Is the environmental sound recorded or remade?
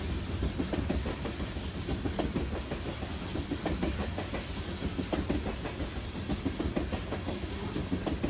recorded